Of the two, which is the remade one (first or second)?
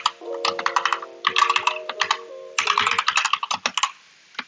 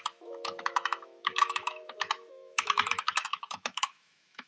second